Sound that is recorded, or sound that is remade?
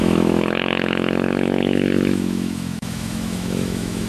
remade